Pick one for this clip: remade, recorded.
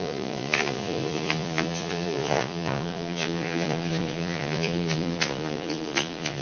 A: remade